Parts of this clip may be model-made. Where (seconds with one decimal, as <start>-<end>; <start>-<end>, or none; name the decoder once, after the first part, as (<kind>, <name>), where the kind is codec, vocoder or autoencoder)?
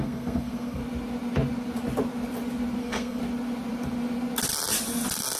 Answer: 0.0-0.8 (codec, SNAC); 2.8-3.2